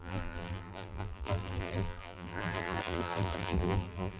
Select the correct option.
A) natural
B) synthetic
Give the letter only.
B